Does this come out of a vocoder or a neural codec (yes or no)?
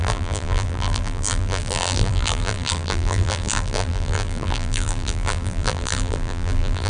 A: yes